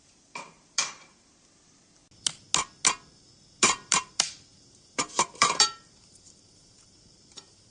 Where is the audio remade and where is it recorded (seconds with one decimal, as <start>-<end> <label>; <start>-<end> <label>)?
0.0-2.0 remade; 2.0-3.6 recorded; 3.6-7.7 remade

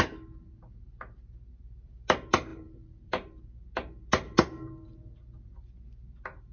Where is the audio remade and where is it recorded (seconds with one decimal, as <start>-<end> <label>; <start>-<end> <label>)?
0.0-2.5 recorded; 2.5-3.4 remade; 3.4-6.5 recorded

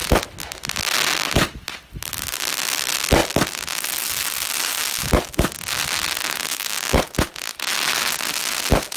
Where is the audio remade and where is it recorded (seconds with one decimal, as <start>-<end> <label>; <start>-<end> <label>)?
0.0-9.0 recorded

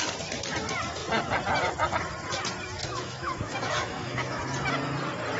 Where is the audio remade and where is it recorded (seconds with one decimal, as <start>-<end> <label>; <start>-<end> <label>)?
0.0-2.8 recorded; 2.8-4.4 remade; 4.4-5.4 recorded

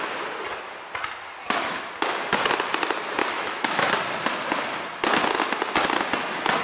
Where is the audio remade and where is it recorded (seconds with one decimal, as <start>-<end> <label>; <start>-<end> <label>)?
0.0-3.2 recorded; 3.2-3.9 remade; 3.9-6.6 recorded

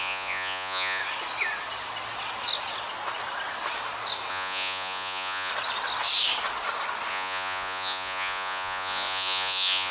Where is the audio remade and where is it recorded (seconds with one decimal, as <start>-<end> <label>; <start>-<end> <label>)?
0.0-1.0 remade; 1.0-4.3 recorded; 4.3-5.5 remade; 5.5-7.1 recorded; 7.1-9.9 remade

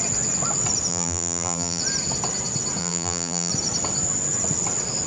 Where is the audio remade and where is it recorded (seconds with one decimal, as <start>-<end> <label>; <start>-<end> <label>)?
0.0-0.9 recorded; 0.9-1.8 remade; 1.8-2.8 recorded; 2.8-3.5 remade; 3.5-5.1 recorded

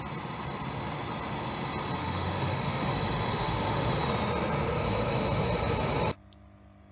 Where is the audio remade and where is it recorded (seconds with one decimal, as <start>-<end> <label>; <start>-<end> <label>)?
0.0-2.0 recorded; 2.0-2.9 remade; 2.9-3.3 recorded; 3.3-3.9 remade; 3.9-6.9 recorded